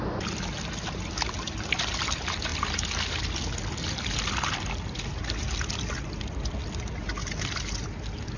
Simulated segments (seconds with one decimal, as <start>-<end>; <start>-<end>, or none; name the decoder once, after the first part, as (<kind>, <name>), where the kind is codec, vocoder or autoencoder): none